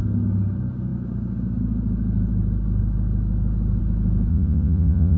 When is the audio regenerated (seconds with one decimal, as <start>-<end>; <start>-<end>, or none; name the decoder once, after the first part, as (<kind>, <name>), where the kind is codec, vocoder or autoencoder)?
4.3-5.2 (vocoder, Vocos)